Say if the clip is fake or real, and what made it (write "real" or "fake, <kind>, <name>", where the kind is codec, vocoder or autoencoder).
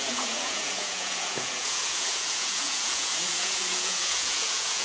fake, vocoder, Vocos